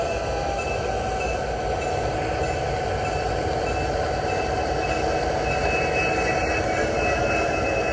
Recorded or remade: recorded